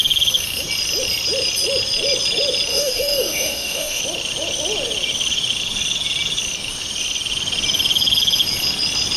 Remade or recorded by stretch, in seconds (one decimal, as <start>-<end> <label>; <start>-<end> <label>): 0.0-2.7 recorded; 2.7-4.0 remade; 4.0-9.2 recorded